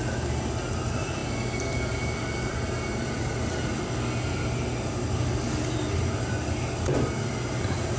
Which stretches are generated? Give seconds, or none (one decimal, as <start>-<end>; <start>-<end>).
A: none